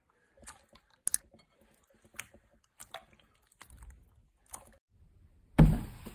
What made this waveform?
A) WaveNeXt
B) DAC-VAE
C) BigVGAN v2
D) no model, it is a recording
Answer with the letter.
D